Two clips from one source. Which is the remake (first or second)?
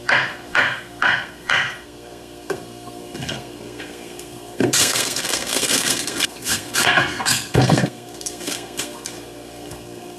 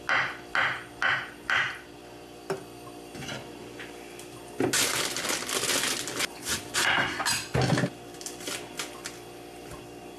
first